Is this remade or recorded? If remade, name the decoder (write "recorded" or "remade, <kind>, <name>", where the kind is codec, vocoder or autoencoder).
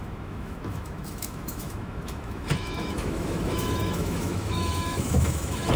remade, autoencoder, DAC-VAE